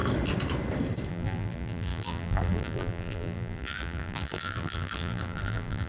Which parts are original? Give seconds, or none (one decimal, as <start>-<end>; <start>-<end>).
0.0-1.1